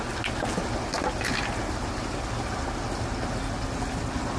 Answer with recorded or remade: recorded